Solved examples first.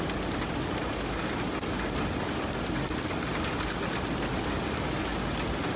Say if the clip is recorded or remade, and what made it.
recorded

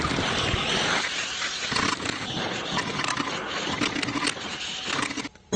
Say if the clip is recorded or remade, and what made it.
recorded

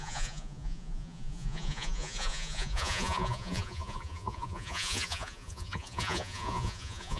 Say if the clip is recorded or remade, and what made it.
remade, vocoder, Vocos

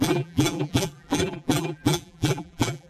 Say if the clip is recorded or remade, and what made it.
remade, vocoder, BigVGAN v2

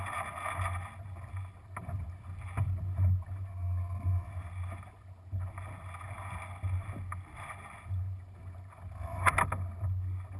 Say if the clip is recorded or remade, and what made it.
recorded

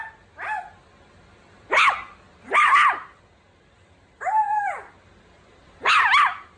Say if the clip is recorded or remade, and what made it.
recorded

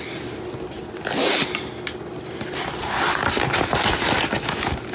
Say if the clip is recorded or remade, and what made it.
recorded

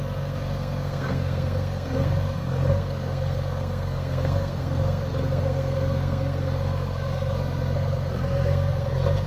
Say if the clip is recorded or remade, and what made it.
remade, codec, SNAC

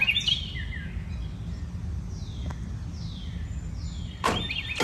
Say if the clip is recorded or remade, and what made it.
recorded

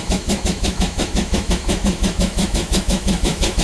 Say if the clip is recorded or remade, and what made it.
remade, autoencoder, DAC-VAE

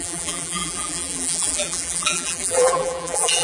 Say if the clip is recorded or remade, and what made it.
remade, vocoder, BigVGAN v2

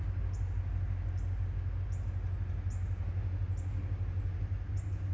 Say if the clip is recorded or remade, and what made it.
recorded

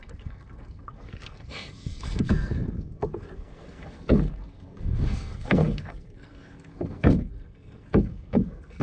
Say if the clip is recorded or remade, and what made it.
remade, codec, SNAC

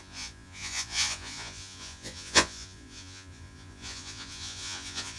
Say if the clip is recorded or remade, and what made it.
remade, vocoder, Vocos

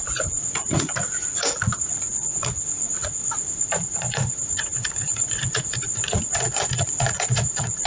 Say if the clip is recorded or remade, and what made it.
remade, vocoder, Vocos